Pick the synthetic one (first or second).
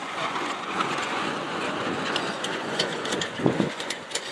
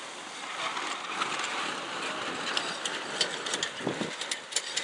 first